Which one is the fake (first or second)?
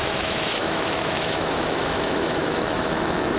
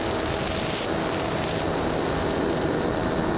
first